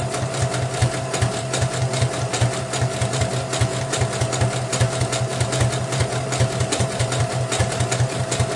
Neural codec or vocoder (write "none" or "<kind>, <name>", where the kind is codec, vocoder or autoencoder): none